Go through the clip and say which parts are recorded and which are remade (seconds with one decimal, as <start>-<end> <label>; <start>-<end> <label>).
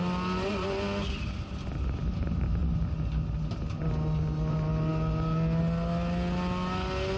0.0-7.2 recorded